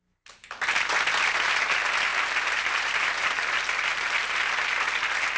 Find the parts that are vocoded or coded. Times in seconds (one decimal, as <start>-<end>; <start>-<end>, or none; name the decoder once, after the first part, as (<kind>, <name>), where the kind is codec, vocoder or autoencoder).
2.1-4.4 (vocoder, BigVGAN v2)